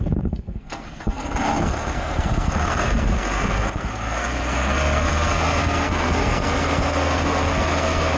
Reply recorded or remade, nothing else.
remade